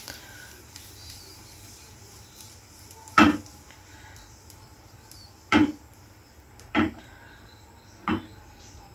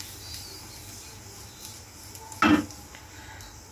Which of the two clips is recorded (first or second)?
second